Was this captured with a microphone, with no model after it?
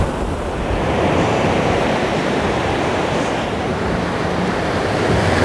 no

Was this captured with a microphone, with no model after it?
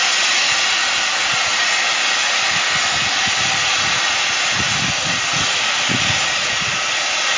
yes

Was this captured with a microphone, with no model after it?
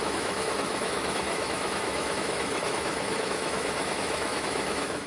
no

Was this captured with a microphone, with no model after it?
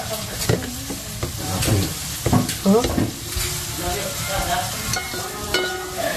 yes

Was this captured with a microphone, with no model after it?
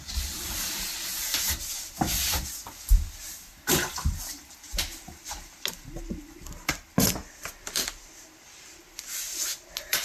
yes